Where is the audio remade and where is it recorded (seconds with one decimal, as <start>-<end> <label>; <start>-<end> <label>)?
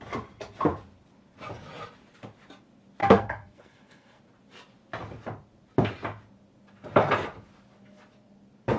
0.0-3.0 recorded; 3.0-4.2 remade; 4.2-8.8 recorded